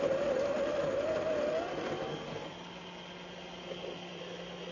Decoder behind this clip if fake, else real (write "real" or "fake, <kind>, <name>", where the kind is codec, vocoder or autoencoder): real